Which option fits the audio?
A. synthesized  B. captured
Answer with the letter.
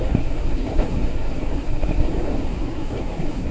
A